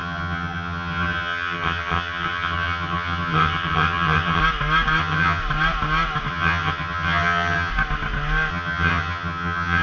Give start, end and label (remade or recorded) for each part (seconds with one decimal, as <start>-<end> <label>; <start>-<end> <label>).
0.0-4.4 remade; 4.4-5.0 recorded; 5.0-5.4 remade; 5.4-6.3 recorded; 6.3-7.7 remade; 7.7-8.5 recorded; 8.5-9.8 remade